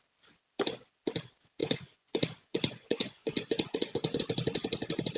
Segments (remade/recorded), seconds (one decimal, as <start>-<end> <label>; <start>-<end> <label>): 0.0-1.6 recorded; 1.6-4.2 remade; 4.2-5.2 recorded